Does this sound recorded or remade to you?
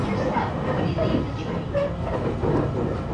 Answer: recorded